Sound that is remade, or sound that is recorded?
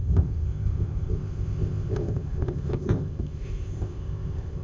remade